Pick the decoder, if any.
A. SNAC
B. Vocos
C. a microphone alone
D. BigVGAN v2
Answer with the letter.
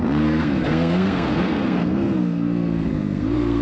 A